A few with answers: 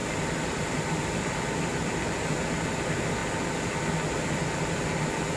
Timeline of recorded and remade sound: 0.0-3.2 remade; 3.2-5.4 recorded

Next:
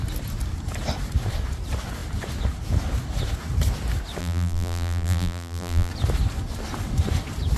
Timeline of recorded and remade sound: 0.0-4.2 recorded; 4.2-5.9 remade; 5.9-7.6 recorded

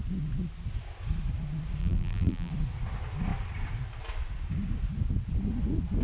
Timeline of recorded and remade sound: 0.0-1.8 recorded; 1.8-2.5 remade; 2.5-6.0 recorded

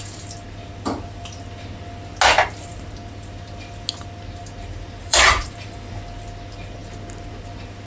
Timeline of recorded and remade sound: 0.0-5.0 recorded; 5.0-5.9 remade; 5.9-7.9 recorded